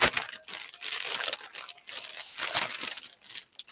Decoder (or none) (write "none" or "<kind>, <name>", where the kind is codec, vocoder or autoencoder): none